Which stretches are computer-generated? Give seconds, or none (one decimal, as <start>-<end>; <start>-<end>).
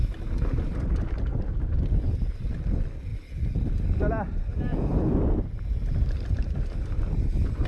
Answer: 1.3-2.4